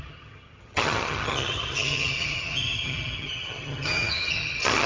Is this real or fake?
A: fake